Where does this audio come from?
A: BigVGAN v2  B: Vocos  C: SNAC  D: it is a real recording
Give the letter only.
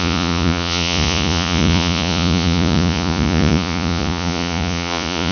B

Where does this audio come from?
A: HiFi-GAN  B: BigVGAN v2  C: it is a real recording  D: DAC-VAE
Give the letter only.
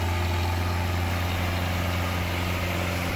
C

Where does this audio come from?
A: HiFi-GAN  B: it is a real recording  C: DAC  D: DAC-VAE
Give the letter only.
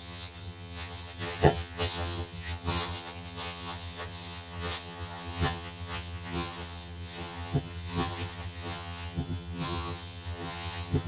A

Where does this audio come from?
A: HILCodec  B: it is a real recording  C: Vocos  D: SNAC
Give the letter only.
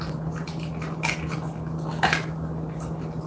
B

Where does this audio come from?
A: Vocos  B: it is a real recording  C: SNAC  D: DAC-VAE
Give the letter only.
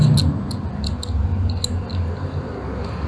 B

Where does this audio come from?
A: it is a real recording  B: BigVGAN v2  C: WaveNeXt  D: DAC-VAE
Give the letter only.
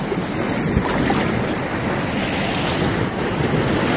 A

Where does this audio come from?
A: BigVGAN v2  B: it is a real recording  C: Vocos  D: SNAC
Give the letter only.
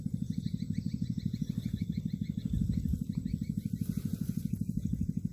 B